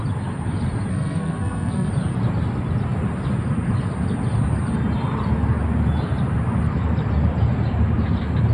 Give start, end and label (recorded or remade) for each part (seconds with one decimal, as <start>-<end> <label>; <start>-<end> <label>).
0.0-0.9 recorded; 0.9-1.9 remade; 1.9-8.5 recorded